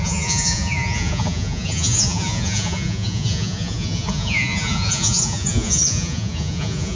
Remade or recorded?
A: remade